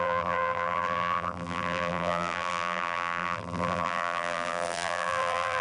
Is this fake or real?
fake